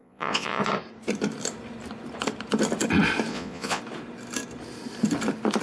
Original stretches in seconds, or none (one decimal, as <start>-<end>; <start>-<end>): 0.6-3.3; 3.8-5.6